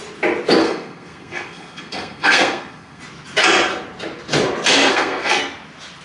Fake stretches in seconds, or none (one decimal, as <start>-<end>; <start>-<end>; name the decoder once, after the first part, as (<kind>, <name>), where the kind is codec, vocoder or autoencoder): 0.6-3.0 (codec, SNAC); 4.9-5.4